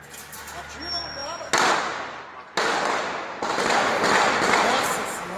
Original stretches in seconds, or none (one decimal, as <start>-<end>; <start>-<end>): 0.0-5.4